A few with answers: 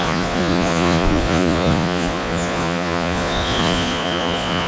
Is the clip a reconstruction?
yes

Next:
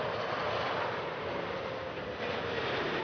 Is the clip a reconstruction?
no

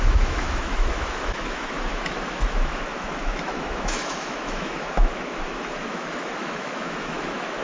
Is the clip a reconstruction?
yes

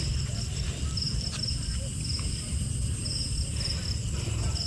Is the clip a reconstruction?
no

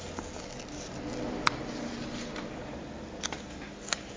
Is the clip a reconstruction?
no